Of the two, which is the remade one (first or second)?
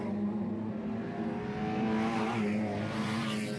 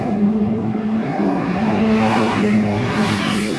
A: second